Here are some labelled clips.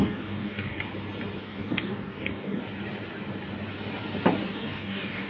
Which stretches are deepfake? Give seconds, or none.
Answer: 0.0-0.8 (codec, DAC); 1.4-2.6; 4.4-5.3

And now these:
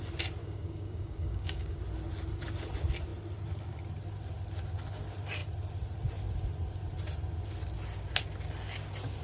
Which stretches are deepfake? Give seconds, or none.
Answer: 0.4-1.8 (codec, DAC)

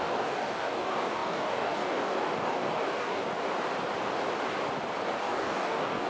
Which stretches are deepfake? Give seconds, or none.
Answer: 0.0-3.3 (codec, DAC); 5.2-6.1

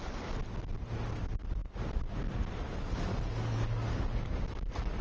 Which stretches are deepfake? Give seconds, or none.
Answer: 3.1-5.0 (codec, DAC)

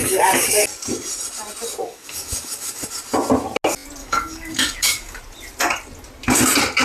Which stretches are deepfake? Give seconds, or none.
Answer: 0.0-0.7 (codec, DAC); 1.8-2.8; 4.0-5.2

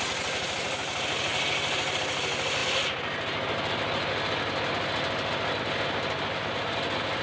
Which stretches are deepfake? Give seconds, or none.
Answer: none

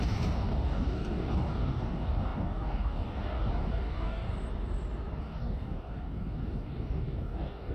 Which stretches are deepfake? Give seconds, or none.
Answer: 0.0-4.3 (codec, DAC); 5.2-7.7

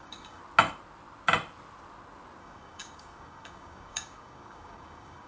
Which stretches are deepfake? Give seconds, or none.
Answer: 0.0-0.4 (codec, DAC); 2.4-5.3